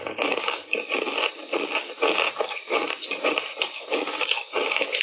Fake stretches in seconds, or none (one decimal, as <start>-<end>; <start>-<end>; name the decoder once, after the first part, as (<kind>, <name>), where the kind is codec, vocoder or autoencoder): 0.0-0.6 (codec, DAC); 3.6-5.0

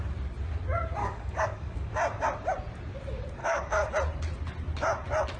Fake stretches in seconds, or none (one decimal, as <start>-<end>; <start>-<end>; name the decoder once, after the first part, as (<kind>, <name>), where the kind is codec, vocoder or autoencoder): 1.0-1.9 (codec, DAC); 3.4-3.9

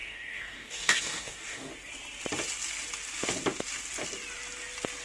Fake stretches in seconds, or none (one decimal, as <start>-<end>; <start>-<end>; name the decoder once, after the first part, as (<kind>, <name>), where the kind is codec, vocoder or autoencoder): 0.0-1.7 (codec, DAC)